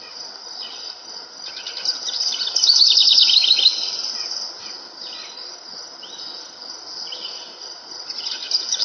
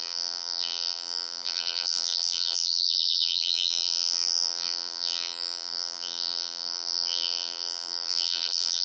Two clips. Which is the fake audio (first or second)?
second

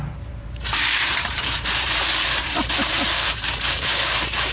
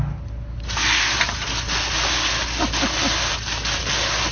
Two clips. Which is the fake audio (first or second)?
first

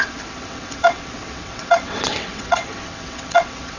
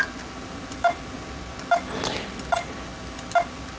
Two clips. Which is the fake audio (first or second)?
first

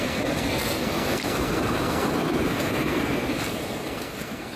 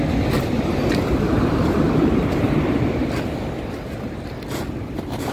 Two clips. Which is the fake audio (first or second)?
first